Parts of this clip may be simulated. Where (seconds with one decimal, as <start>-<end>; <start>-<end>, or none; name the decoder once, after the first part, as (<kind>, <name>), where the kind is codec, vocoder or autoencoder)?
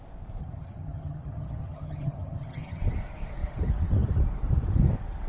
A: 0.4-2.8 (vocoder, HiFi-GAN)